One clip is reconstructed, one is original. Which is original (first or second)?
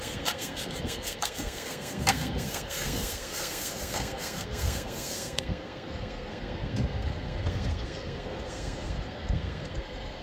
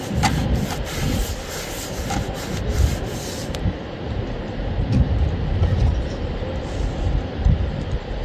second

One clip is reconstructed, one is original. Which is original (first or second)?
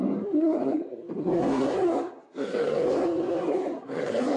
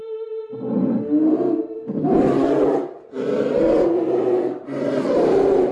second